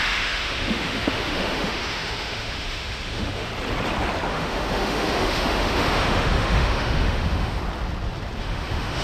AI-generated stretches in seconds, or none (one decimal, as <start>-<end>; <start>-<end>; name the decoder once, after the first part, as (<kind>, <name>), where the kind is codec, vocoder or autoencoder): 0.0-3.5 (autoencoder, DAC-VAE); 4.3-7.6; 8.4-9.0